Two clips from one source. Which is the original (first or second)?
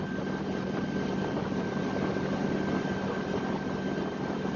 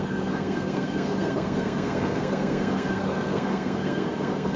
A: first